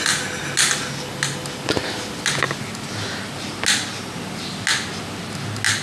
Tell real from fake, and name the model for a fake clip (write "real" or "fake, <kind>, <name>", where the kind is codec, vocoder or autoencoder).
real